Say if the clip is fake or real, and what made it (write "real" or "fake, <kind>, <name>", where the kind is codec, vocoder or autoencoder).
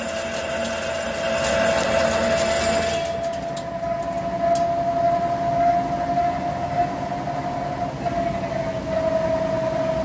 real